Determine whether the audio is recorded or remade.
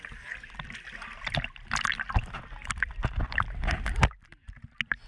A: recorded